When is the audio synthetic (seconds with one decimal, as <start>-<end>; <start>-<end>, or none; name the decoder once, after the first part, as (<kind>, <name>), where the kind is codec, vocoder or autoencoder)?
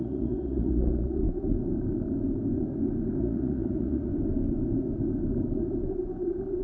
0.0-1.2 (vocoder, Vocos); 3.2-4.1